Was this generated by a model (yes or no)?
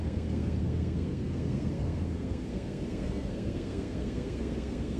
yes